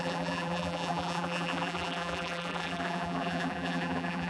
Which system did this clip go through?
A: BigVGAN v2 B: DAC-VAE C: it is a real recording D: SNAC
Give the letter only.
A